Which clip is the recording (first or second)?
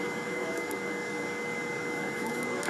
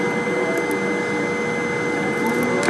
second